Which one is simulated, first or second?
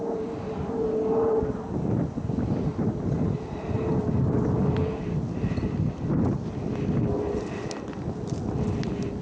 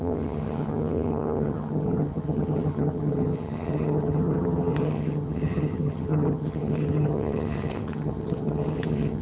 second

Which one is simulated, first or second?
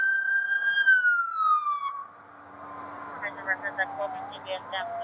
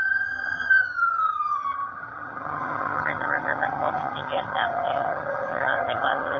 second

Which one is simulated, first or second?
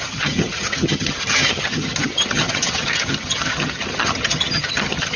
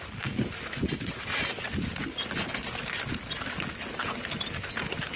first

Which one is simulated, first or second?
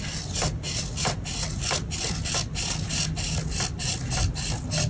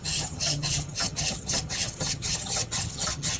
second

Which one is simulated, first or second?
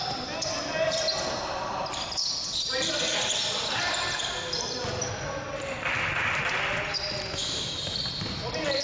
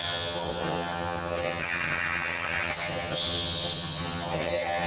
second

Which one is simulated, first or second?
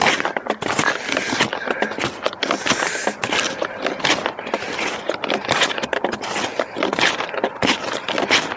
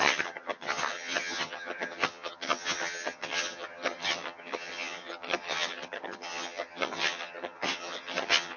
second